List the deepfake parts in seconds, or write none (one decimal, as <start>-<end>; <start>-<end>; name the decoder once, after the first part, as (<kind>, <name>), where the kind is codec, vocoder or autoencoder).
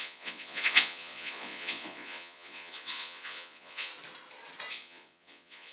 0.0-3.9 (vocoder, Vocos); 4.7-5.7